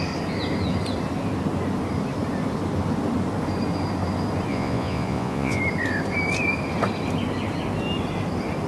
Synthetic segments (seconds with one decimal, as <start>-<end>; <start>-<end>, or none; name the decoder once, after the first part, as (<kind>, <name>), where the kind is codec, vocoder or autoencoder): 4.5-5.6 (vocoder, Vocos)